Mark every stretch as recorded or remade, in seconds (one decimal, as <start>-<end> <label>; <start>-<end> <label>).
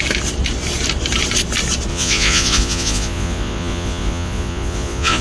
0.0-1.9 recorded; 1.9-5.2 remade